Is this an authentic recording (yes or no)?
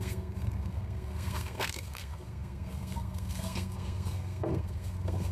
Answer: no